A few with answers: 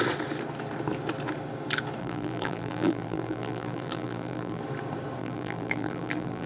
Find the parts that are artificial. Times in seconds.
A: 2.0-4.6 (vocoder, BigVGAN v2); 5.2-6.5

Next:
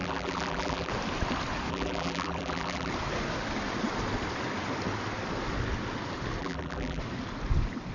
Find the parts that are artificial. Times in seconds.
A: 0.0-0.9 (vocoder, BigVGAN v2); 1.7-2.9; 6.4-7.0